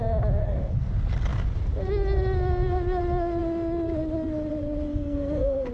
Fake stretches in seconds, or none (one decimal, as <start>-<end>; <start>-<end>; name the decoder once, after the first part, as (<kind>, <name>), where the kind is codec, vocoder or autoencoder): 0.4-0.9 (codec, SNAC); 4.9-5.7